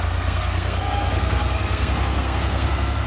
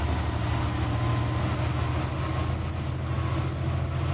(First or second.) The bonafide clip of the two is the second